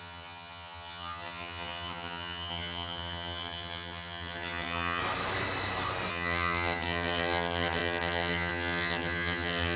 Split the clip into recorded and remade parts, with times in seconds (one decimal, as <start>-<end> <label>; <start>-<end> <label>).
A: 0.0-5.0 remade; 5.0-6.1 recorded; 6.1-9.8 remade